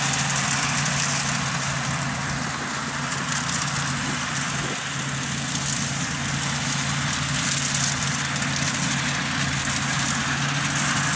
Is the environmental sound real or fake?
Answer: real